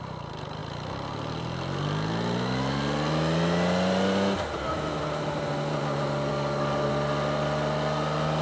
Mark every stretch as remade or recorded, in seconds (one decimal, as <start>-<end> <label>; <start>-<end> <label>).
0.0-6.3 recorded; 6.3-6.9 remade; 6.9-8.4 recorded